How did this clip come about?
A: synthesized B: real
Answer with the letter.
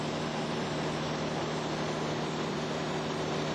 B